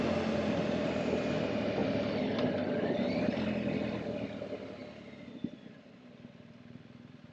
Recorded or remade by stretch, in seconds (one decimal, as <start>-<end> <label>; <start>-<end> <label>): 0.0-7.3 recorded